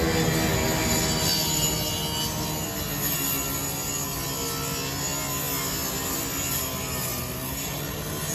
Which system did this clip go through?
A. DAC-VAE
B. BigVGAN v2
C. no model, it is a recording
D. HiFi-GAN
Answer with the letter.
C